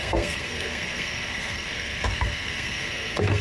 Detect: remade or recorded remade